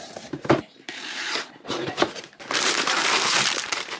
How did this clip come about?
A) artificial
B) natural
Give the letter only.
A